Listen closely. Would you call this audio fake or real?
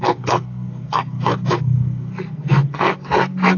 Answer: fake